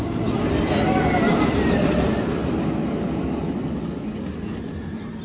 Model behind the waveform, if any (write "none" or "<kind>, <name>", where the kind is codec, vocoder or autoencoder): none